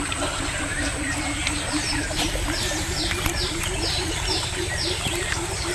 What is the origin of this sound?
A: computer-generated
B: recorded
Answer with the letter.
A